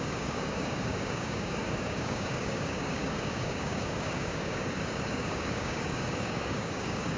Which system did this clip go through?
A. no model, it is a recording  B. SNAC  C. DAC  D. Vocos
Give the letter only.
C